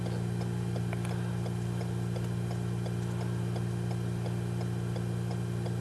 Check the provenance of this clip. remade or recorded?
recorded